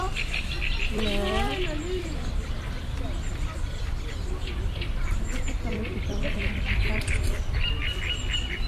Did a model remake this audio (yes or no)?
yes